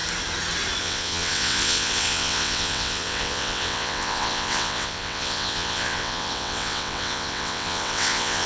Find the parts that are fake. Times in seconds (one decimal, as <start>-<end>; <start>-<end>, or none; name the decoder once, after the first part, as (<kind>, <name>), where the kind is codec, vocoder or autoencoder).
0.8-8.5 (vocoder, WaveNeXt)